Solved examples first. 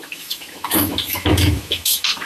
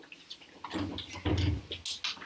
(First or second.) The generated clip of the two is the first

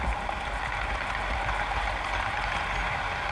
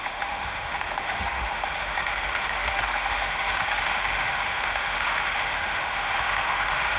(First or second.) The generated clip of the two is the second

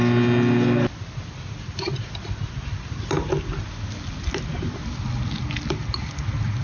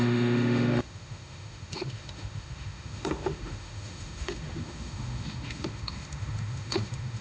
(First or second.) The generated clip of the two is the second